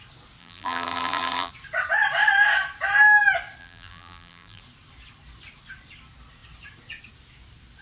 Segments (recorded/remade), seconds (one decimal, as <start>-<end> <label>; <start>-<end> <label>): 0.0-0.4 recorded; 0.4-1.5 remade; 1.5-3.6 recorded; 3.6-4.6 remade; 4.6-7.8 recorded